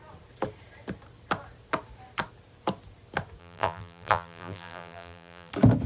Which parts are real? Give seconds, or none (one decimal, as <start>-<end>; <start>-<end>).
0.0-3.4; 5.5-5.9